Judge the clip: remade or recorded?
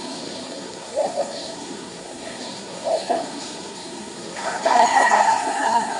remade